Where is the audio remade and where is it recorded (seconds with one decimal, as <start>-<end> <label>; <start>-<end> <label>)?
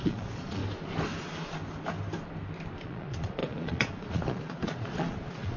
0.0-0.6 remade; 0.6-2.8 recorded; 2.8-5.6 remade